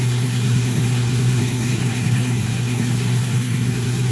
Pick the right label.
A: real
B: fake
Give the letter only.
B